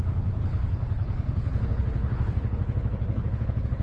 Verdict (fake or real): fake